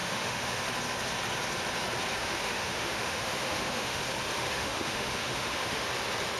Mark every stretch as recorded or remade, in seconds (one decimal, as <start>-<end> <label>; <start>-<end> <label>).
0.0-0.6 remade; 0.6-2.2 recorded; 2.2-4.0 remade; 4.0-4.4 recorded; 4.4-5.9 remade; 5.9-6.4 recorded